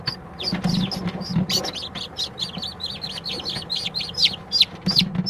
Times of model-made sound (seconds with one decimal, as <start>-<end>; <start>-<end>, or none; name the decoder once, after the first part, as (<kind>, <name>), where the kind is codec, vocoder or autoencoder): none